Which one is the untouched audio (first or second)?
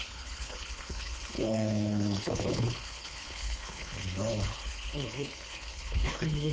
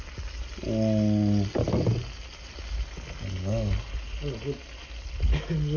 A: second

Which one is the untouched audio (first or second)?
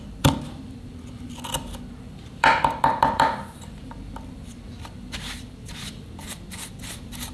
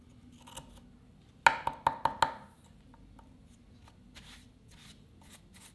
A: second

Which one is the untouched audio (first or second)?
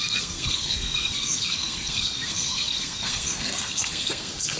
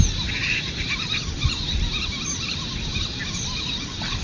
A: second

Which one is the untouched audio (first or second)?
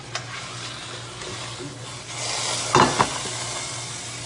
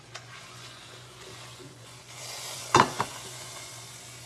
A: first